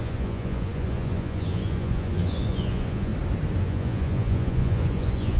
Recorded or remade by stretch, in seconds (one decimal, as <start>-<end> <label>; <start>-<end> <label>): 0.0-3.1 remade; 3.1-3.6 recorded; 3.6-5.4 remade

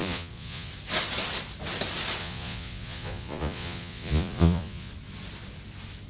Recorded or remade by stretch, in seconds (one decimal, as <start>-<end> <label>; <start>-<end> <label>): 0.0-0.7 remade; 0.7-2.2 recorded; 2.2-4.9 remade; 4.9-6.1 recorded

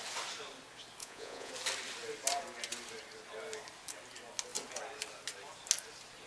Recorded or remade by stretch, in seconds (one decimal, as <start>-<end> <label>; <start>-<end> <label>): 0.0-1.0 recorded; 1.0-1.5 remade; 1.5-6.3 recorded

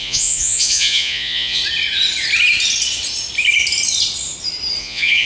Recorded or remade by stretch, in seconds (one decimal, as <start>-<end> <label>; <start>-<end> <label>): 0.0-1.6 remade; 1.6-4.8 recorded; 4.8-5.3 remade